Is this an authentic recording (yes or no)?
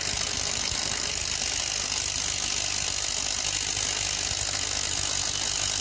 yes